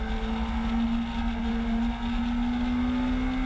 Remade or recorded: recorded